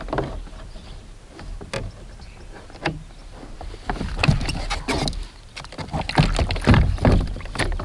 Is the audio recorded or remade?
recorded